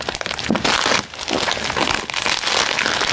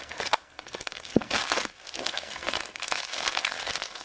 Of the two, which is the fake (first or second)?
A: second